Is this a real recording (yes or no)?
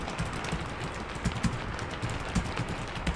yes